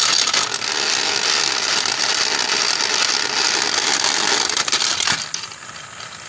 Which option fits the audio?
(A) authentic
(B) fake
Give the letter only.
A